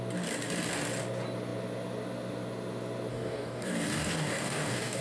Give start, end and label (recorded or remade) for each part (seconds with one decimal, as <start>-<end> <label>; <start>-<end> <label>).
0.0-3.1 recorded; 3.1-5.0 remade